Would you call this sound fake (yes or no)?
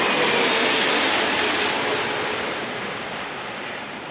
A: no